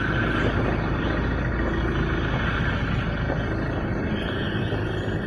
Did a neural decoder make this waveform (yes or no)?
no